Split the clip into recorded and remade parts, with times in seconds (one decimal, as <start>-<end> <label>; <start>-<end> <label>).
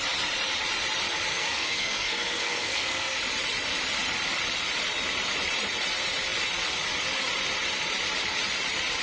0.0-1.3 recorded; 1.3-3.2 remade; 3.2-9.0 recorded